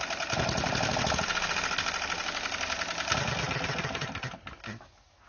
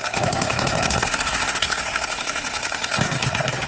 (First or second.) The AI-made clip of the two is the second